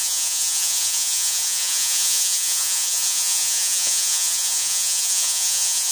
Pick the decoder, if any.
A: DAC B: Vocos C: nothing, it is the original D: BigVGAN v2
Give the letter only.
B